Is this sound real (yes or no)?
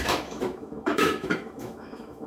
no